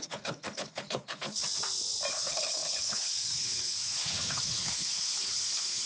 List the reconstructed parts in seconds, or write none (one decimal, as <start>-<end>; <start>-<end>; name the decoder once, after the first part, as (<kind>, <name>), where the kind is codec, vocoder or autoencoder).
0.0-1.4 (codec, HILCodec); 2.1-5.9